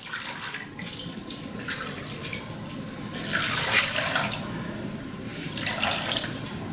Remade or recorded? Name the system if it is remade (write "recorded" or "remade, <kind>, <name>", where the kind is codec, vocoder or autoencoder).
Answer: recorded